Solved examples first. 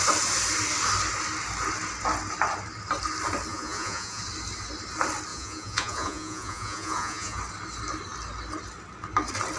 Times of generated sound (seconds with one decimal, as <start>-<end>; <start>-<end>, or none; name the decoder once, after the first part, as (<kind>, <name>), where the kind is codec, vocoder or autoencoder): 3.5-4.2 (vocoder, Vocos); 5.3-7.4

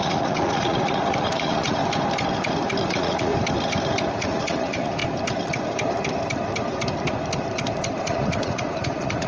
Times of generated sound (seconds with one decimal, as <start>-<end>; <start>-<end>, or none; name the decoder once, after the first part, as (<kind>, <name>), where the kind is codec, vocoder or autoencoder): 0.0-1.8 (vocoder, Vocos); 2.9-3.3; 4.1-5.0; 8.0-9.3

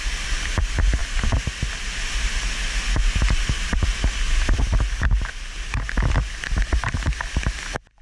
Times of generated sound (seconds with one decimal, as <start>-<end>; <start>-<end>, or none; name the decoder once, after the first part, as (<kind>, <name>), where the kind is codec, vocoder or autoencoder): none